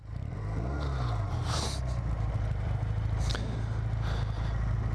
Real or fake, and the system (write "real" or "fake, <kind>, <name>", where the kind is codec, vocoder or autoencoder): real